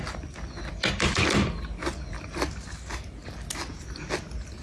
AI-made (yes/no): no